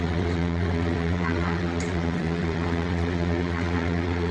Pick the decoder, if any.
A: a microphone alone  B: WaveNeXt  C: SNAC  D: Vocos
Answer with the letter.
B